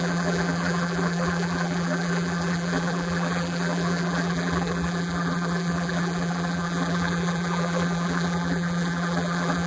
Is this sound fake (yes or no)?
yes